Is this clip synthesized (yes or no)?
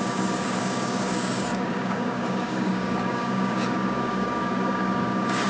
yes